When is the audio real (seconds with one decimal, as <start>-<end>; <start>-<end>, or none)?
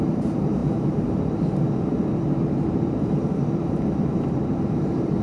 none